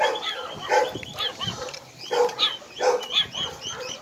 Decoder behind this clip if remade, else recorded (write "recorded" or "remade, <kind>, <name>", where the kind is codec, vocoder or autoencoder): recorded